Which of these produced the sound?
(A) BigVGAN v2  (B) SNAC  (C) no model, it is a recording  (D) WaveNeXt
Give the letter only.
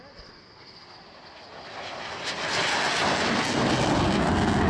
C